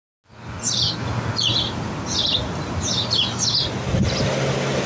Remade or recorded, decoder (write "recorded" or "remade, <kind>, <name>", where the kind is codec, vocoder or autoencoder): recorded